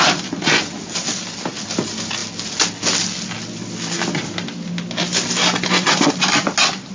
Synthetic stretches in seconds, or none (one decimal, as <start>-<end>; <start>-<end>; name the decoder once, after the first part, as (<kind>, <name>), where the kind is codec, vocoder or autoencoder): none